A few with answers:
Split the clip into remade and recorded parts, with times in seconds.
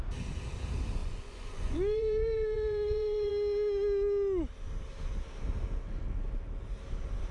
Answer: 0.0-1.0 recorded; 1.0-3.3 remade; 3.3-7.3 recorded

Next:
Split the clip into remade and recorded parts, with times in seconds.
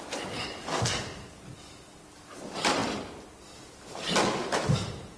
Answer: 0.0-5.2 recorded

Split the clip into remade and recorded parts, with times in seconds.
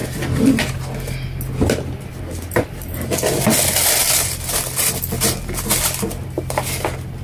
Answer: 0.0-7.2 recorded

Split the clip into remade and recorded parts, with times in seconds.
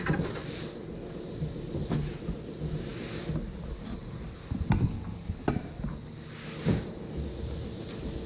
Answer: 0.0-8.3 recorded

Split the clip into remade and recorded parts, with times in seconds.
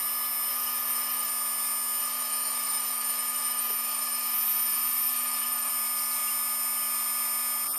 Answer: 0.0-0.5 recorded; 0.5-1.3 remade; 1.3-2.0 recorded; 2.0-5.7 remade; 5.7-7.8 recorded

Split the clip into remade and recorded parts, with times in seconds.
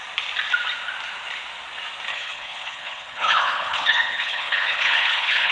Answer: 0.0-2.1 recorded; 2.1-5.5 remade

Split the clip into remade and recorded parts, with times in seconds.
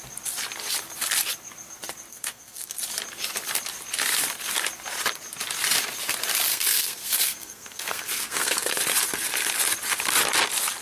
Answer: 0.0-2.1 recorded; 2.1-2.8 remade; 2.8-6.5 recorded; 6.5-8.7 remade; 8.7-10.8 recorded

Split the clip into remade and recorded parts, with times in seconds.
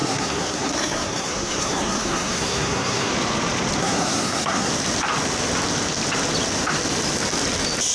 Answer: 0.0-3.1 remade; 3.1-3.8 recorded; 3.8-4.7 remade; 4.7-7.9 recorded